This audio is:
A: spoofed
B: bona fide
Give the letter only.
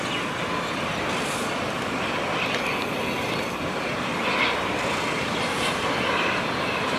B